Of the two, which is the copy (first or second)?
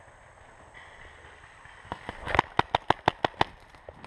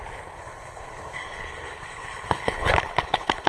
second